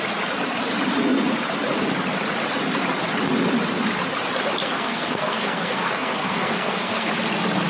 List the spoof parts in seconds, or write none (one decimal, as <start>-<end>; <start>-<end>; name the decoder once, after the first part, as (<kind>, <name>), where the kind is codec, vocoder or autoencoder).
4.6-7.1 (codec, SNAC)